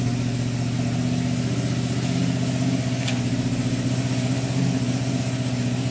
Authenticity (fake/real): real